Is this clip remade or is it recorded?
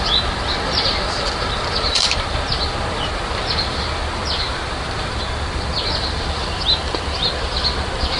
remade